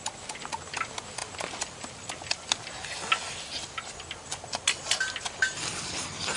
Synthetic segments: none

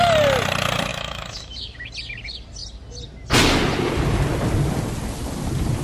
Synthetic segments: 0.9-1.9 (autoencoder, DAC-VAE)